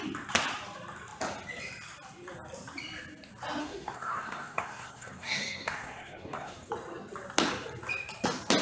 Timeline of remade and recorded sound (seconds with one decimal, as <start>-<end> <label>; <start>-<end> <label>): 0.0-3.6 recorded; 3.6-6.7 remade; 6.7-8.6 recorded